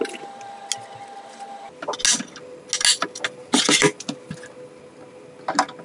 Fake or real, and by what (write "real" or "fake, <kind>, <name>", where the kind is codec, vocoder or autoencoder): real